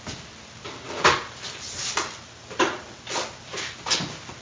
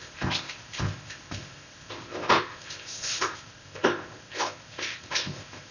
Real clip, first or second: first